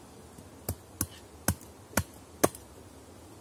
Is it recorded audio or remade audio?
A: recorded